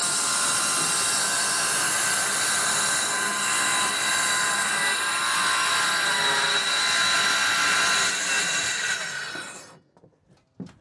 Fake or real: real